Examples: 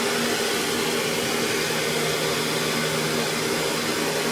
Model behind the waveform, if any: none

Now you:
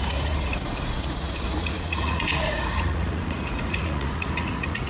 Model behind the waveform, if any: vocoder, Vocos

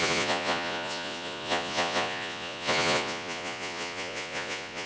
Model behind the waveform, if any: vocoder, Vocos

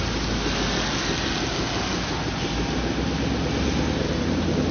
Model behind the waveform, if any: none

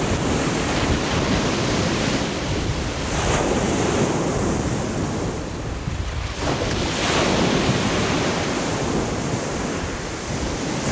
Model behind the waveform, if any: none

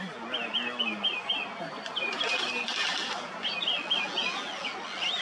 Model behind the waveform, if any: none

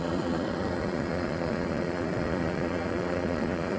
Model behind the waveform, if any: vocoder, Vocos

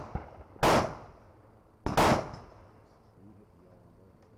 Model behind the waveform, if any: none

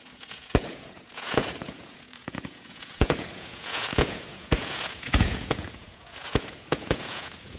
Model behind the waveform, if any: vocoder, Vocos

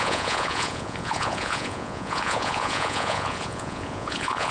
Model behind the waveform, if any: vocoder, Vocos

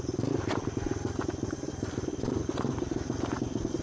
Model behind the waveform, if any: none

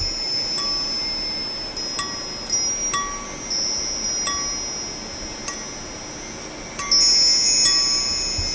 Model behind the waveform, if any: none